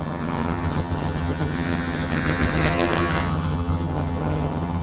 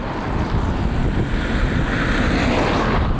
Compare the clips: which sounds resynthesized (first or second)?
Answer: first